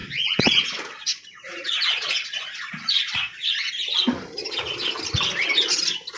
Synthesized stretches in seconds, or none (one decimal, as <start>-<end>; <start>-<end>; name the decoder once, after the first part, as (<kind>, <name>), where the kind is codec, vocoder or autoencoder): 0.0-3.7 (vocoder, Vocos); 4.4-5.0